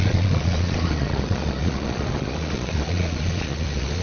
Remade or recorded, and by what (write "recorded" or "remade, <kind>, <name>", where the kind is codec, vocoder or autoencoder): remade, vocoder, Vocos